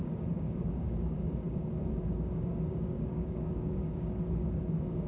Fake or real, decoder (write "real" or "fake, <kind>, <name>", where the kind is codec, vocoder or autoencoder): fake, codec, DAC